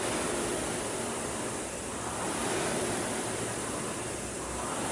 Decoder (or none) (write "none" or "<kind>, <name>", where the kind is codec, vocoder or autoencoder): none